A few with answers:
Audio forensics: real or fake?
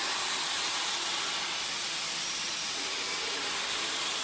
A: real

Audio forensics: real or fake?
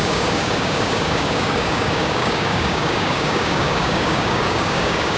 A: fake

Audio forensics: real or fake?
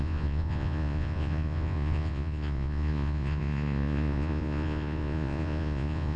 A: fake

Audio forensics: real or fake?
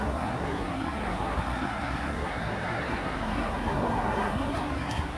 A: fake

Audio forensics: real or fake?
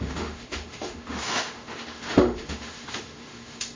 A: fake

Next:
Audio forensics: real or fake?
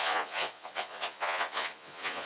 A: fake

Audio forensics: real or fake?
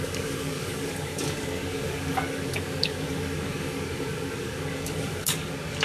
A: fake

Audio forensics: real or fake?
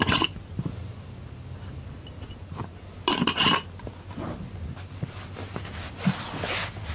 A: real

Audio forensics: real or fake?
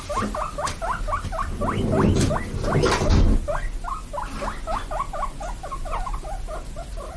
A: real